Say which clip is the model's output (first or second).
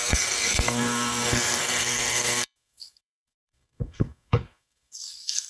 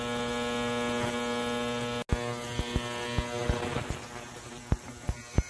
first